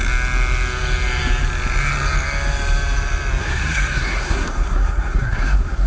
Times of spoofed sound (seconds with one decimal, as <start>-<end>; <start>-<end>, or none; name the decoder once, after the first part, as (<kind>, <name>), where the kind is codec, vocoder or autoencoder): 3.4-5.9 (codec, SNAC)